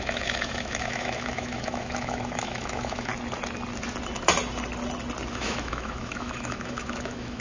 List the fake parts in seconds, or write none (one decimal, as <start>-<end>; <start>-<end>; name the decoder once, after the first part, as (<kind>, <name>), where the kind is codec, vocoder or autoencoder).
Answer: 0.0-3.1 (autoencoder, DAC-VAE); 5.3-7.4